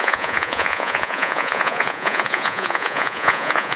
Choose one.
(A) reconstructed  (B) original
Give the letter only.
A